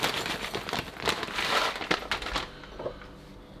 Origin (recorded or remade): recorded